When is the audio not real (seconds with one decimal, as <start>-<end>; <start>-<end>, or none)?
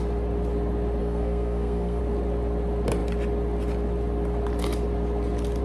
1.0-2.0